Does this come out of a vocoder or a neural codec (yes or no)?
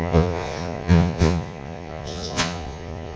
yes